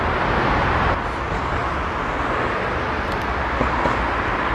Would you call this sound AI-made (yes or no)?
no